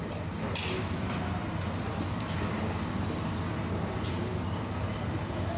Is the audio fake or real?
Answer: real